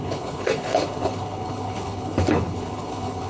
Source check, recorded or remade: remade